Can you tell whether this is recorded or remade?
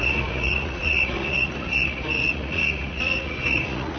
remade